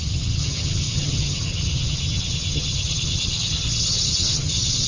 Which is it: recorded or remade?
remade